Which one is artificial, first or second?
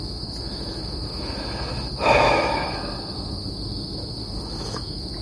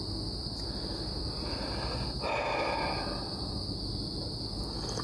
first